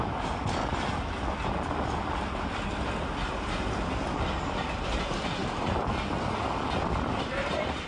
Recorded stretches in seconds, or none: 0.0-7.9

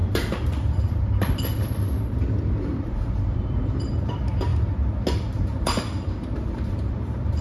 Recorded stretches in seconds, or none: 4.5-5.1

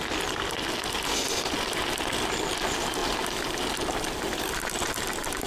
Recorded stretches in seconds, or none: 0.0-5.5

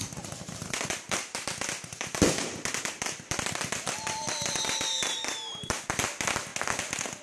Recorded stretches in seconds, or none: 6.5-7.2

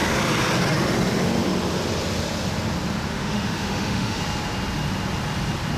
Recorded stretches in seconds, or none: 0.0-3.1; 4.2-5.8